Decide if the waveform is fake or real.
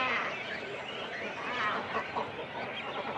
real